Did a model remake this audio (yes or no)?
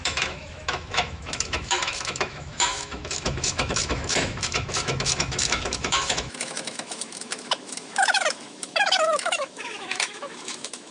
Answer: yes